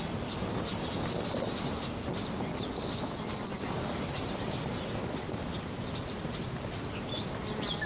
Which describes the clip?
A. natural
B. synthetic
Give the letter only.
A